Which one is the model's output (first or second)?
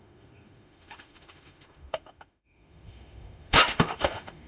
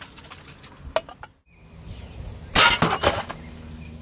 first